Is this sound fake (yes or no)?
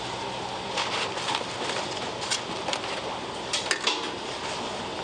no